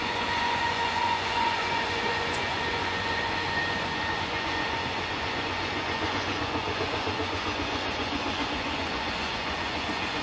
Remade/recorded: remade